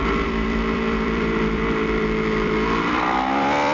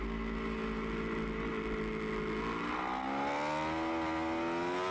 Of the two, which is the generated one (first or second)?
first